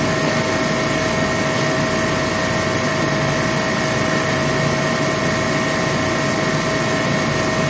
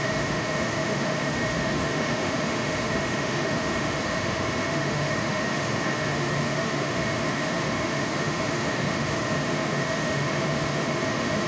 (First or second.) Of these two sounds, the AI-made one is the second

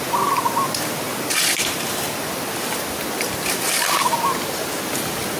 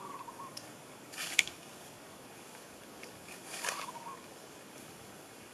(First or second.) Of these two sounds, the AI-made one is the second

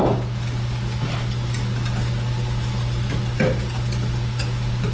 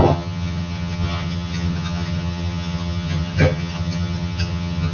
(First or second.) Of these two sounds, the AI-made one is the second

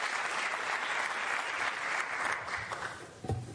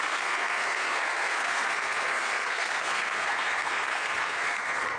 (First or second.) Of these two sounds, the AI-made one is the second